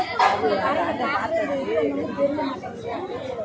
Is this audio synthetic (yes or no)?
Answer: no